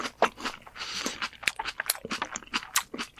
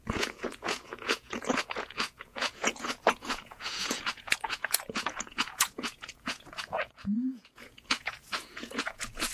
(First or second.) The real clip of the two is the first